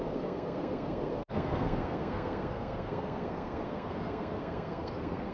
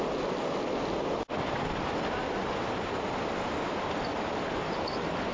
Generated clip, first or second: first